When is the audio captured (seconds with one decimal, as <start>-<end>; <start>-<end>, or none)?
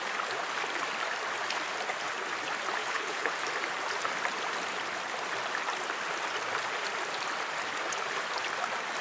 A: 0.0-2.8; 3.3-9.0